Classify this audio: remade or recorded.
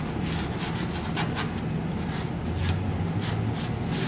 recorded